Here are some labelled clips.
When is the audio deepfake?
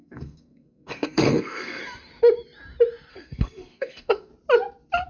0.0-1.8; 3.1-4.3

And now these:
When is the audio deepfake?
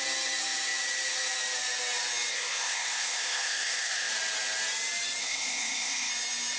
2.3-4.1; 5.2-6.1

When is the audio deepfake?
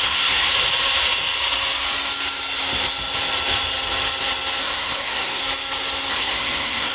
0.0-0.5; 4.6-5.4; 6.1-6.9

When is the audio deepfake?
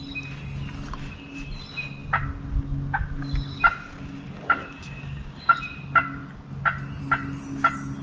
4.8-5.5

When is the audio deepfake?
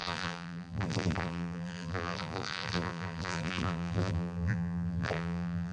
0.0-5.7